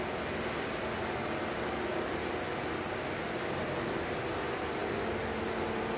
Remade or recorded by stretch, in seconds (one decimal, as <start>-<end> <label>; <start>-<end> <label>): 0.0-6.0 recorded

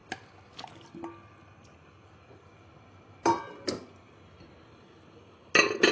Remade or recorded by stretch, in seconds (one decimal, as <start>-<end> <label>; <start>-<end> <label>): 0.0-5.9 recorded

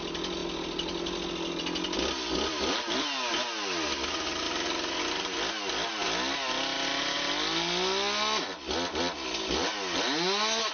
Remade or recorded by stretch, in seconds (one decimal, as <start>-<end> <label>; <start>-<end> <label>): 0.0-10.7 recorded

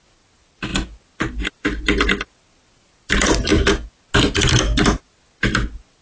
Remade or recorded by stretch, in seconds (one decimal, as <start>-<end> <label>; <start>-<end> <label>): 0.0-6.0 recorded

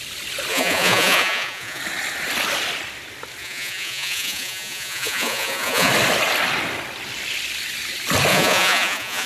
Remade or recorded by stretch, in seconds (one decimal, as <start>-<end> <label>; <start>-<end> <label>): 0.0-0.5 recorded; 0.5-1.8 remade; 1.8-3.4 recorded; 3.4-5.9 remade; 5.9-8.3 recorded; 8.3-9.3 remade

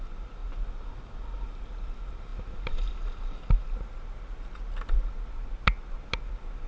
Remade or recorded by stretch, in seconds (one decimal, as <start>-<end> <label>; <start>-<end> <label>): 0.0-6.7 recorded